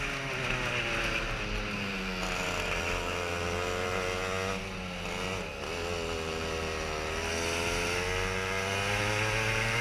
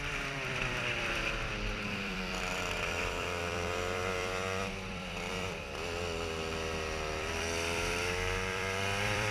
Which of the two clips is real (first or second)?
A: first